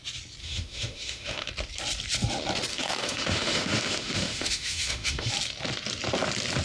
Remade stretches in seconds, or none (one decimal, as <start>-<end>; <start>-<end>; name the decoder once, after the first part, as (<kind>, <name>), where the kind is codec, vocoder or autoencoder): 0.4-1.5 (autoencoder, DAC-VAE); 2.7-5.3

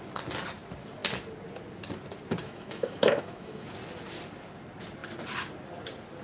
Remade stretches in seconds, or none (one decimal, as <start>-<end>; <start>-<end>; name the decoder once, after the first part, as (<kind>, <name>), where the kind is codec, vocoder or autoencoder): 2.4-3.7 (autoencoder, DAC-VAE)